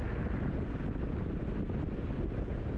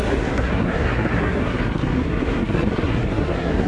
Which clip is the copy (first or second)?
second